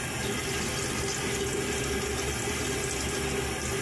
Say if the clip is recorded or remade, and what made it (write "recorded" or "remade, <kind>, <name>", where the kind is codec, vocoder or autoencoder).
recorded